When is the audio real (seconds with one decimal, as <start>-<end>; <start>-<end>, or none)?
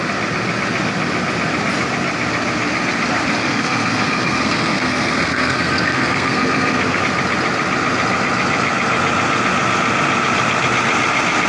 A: 0.0-3.4; 7.0-11.5